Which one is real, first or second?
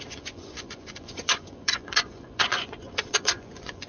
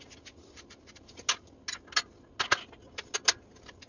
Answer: second